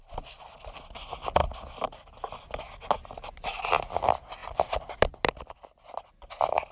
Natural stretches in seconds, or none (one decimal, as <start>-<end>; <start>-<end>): 0.0-6.7